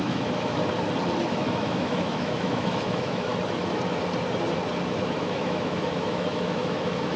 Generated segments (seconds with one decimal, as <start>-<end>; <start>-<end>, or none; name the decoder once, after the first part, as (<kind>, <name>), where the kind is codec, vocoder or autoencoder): 0.0-0.6 (autoencoder, DAC-VAE); 1.3-3.3; 5.0-7.2